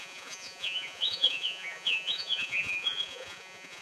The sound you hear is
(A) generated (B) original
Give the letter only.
A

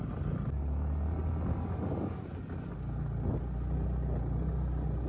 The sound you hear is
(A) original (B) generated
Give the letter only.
A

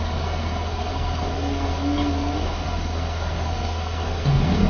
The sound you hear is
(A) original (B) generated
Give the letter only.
B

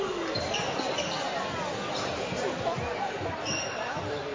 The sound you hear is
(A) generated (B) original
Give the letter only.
B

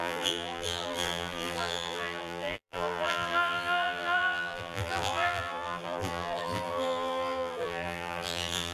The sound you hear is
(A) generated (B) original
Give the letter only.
A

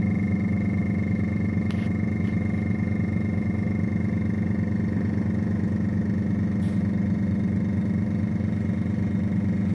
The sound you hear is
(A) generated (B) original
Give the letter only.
B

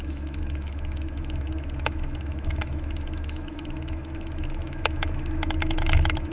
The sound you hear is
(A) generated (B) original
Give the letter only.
A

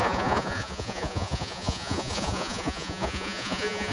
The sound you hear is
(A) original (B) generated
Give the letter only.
B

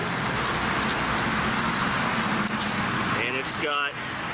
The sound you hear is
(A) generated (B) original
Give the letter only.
B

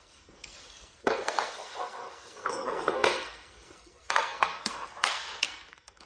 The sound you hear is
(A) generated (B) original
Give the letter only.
A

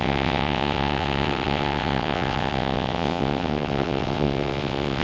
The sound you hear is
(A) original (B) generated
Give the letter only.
B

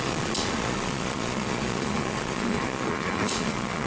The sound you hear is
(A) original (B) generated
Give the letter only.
B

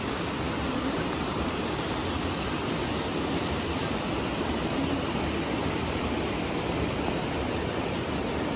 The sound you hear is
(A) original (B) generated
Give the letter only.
A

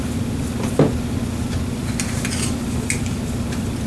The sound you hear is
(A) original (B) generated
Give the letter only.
A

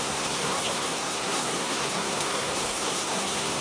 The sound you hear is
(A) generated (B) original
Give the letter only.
A